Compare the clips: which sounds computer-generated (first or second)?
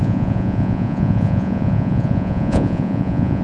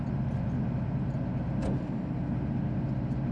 first